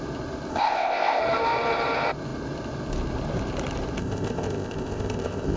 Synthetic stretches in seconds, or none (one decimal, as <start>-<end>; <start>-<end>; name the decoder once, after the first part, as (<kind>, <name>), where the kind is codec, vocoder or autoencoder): 0.5-1.2 (codec, ZipCodec); 4.0-5.6